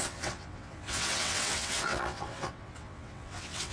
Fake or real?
fake